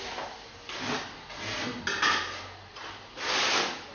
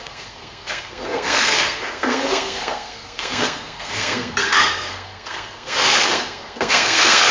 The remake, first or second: second